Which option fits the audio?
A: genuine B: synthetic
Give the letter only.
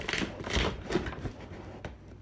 A